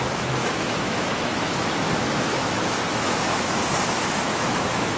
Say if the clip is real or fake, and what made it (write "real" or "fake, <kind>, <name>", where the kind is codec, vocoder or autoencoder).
fake, autoencoder, DAC-VAE